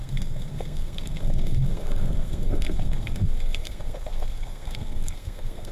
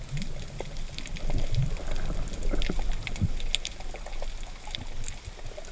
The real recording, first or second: second